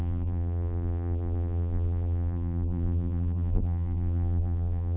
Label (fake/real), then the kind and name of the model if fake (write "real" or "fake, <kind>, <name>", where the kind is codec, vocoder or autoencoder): fake, vocoder, BigVGAN v2